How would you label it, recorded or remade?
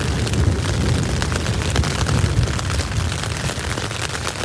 recorded